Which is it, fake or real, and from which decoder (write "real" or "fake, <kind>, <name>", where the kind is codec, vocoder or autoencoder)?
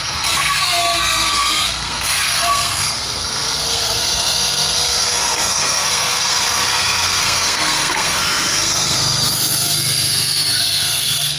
fake, codec, SNAC